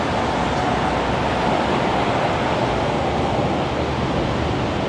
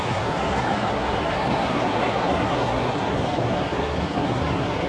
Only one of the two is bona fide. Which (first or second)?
first